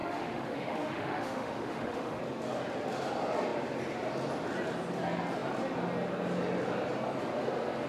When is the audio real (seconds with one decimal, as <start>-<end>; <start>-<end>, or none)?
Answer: 2.2-7.9